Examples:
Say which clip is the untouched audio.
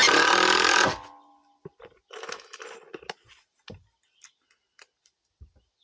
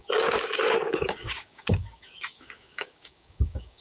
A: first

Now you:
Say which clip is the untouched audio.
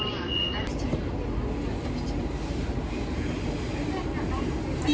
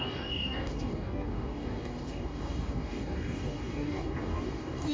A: first